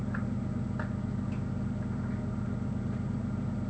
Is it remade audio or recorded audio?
recorded